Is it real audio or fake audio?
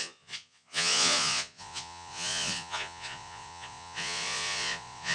fake